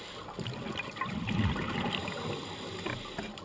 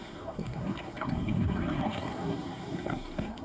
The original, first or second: first